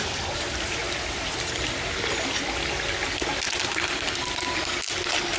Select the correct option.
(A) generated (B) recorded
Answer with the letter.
B